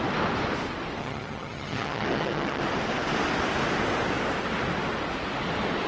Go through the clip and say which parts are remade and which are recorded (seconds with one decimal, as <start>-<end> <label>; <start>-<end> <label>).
0.0-1.0 recorded; 1.0-2.6 remade; 2.6-5.9 recorded